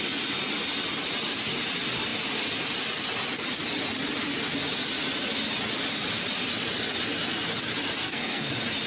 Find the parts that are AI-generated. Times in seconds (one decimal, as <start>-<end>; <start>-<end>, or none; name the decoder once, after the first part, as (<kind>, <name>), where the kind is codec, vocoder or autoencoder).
8.0-8.5 (codec, SNAC)